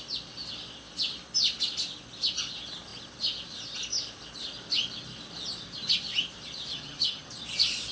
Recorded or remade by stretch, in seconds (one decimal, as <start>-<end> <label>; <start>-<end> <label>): 0.0-6.7 recorded; 6.7-7.3 remade; 7.3-7.9 recorded